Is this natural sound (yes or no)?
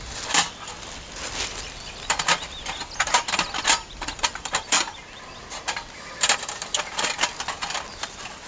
yes